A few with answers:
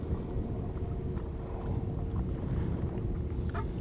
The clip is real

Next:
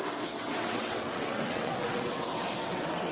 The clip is fake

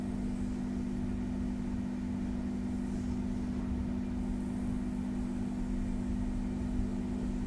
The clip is real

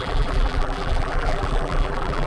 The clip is fake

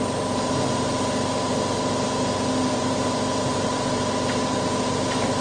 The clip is real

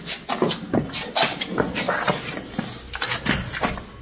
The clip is real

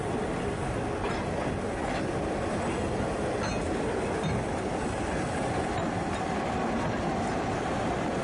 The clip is real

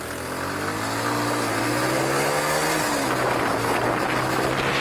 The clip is real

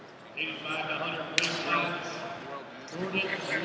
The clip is real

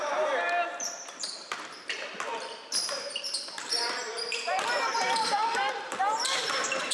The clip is fake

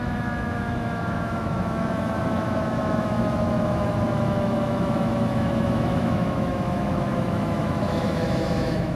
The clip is fake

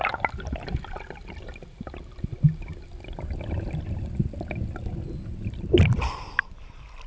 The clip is real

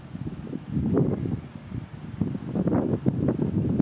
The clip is real